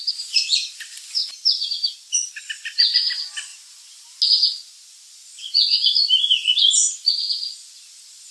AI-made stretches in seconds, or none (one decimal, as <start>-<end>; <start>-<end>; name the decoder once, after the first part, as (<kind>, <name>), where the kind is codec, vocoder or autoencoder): none